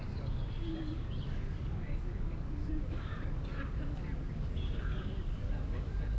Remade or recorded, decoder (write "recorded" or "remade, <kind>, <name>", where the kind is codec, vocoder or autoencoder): remade, codec, DAC